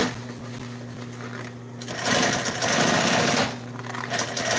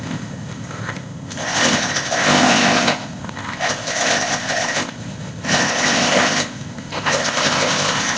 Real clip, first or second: first